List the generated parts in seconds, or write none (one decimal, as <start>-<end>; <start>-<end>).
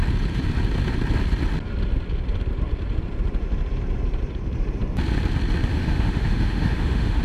5.7-7.2